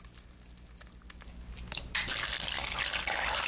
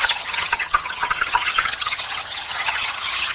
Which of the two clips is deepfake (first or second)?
second